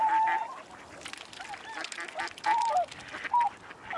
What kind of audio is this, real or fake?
real